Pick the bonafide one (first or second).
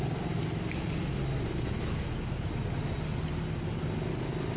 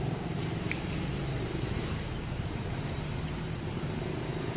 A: first